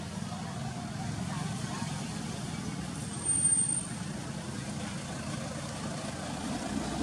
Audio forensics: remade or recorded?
recorded